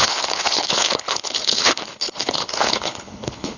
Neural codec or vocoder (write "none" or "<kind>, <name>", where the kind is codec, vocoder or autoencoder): codec, HILCodec